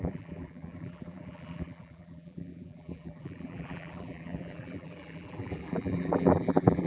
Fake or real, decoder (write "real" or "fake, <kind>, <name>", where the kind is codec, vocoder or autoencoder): fake, vocoder, BigVGAN v2